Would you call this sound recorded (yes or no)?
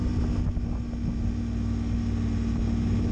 yes